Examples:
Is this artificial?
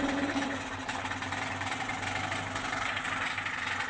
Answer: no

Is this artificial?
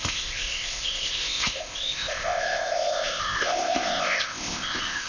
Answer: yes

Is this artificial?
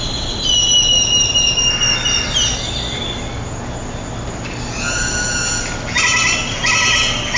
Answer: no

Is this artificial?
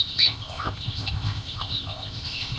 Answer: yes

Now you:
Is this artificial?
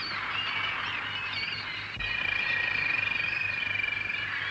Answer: no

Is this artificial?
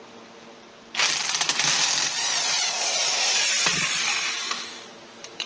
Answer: no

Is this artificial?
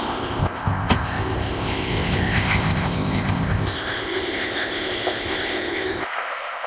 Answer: yes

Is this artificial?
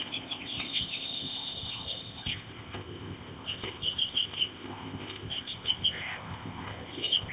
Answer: yes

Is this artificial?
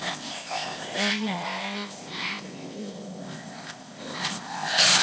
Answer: yes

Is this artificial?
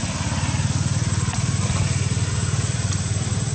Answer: no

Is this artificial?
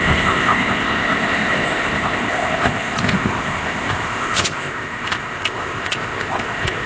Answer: yes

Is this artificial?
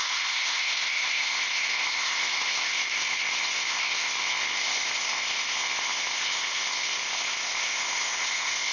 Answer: yes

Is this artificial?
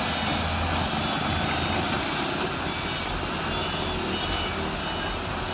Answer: no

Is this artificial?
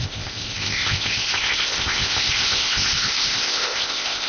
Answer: yes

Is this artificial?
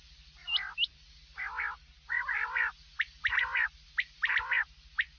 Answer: no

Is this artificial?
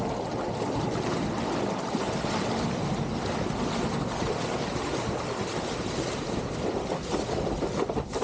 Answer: no